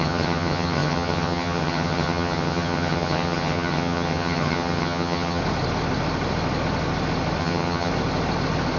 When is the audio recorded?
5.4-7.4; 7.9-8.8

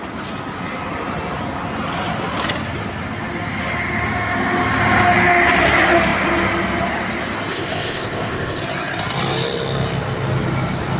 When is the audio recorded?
0.0-7.5; 8.6-11.0

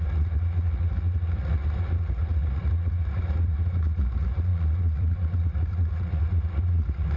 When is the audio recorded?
none

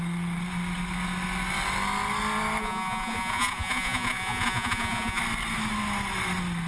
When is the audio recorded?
0.0-2.6; 5.2-6.7